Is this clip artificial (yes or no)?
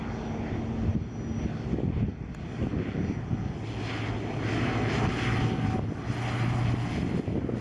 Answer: no